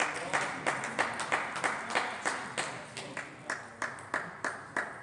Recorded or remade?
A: recorded